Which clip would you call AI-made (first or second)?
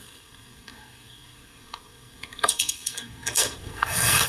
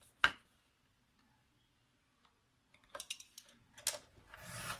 first